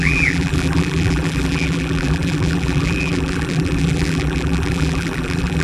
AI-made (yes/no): yes